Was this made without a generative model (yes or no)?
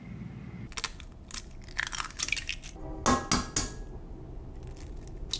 yes